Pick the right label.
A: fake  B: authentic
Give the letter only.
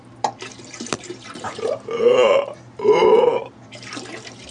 A